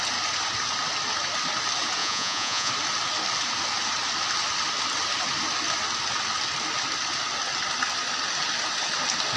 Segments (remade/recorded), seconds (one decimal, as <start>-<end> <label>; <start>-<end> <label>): 0.0-2.0 recorded; 2.0-2.7 remade; 2.7-9.4 recorded